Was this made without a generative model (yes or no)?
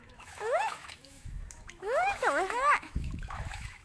no